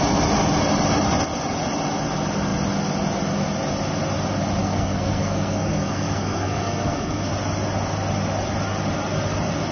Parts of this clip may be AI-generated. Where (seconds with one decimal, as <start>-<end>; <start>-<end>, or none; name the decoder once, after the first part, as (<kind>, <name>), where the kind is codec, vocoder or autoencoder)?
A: 4.6-7.3 (codec, SNAC)